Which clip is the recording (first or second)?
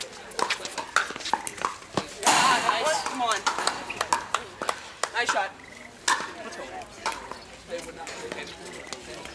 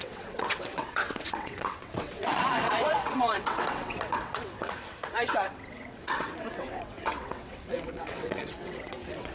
first